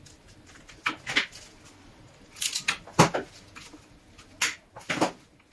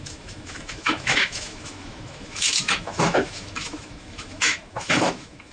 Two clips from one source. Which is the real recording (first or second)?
first